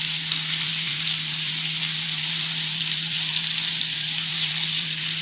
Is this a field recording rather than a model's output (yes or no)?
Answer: no